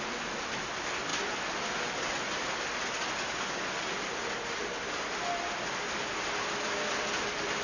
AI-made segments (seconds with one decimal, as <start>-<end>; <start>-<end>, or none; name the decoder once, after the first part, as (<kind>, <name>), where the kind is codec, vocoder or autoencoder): none